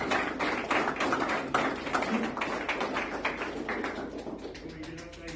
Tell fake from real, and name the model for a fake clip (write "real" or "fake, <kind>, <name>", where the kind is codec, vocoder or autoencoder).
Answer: real